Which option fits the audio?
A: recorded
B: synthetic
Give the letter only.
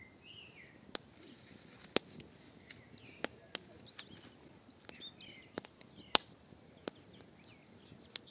A